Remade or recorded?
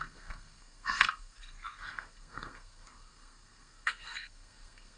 remade